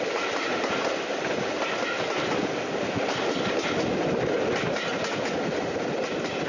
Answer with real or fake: real